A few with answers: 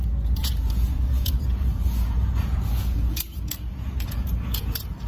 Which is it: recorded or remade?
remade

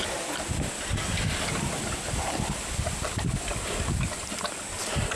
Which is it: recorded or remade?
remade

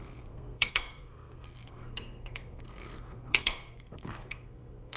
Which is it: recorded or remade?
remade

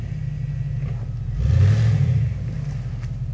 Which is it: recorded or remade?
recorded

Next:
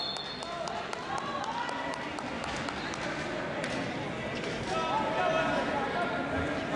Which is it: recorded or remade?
recorded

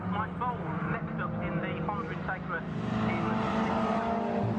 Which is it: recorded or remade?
recorded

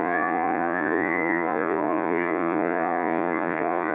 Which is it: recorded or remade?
remade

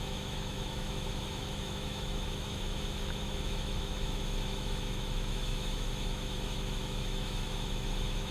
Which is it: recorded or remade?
remade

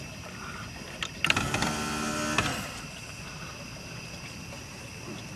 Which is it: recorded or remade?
recorded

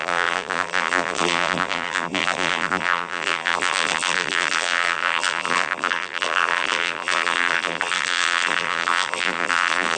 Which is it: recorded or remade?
remade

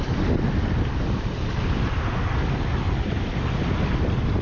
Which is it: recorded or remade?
recorded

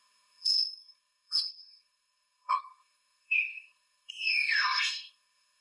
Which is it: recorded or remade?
remade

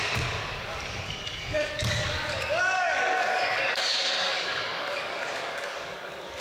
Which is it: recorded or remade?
remade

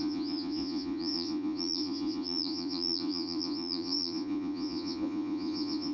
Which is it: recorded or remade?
remade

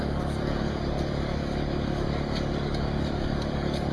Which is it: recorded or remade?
remade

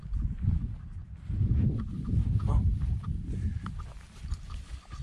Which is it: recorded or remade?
remade